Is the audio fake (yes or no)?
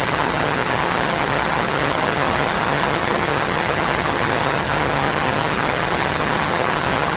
yes